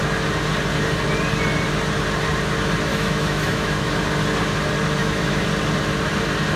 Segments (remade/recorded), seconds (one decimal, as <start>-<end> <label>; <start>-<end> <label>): 0.0-2.9 recorded; 2.9-3.9 remade; 3.9-5.0 recorded; 5.0-5.5 remade; 5.5-6.6 recorded